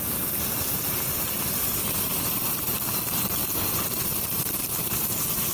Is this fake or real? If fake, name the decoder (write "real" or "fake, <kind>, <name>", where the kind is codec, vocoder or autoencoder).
fake, vocoder, BigVGAN v2